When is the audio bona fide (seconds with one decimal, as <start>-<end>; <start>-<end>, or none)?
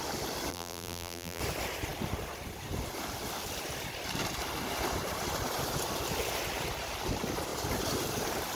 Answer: 0.0-0.5; 1.4-8.6